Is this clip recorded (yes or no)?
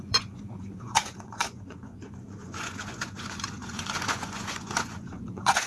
no